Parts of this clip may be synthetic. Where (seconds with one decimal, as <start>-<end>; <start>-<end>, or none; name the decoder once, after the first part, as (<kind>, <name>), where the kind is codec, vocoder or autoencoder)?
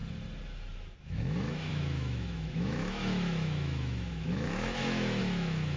1.0-5.8 (autoencoder, DAC-VAE)